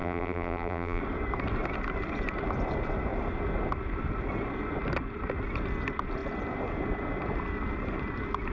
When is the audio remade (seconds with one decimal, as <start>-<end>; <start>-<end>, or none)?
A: 0.0-1.0